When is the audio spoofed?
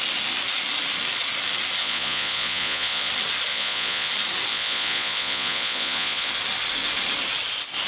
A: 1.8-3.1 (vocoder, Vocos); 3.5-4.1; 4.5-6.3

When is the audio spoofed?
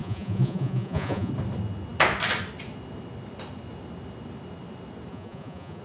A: 0.0-1.3 (vocoder, Vocos); 5.1-5.8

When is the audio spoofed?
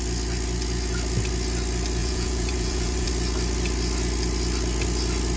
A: 2.0-3.1 (vocoder, Vocos)